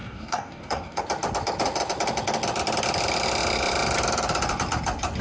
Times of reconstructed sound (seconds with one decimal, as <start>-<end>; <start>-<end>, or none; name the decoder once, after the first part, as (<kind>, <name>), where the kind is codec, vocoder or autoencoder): 0.0-1.0 (codec, DAC)